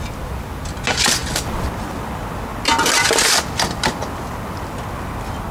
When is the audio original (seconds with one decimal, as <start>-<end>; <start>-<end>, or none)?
0.0-5.5